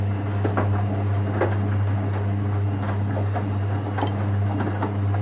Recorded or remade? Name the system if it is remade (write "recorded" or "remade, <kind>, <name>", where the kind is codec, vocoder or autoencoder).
recorded